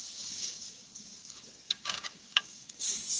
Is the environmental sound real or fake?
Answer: fake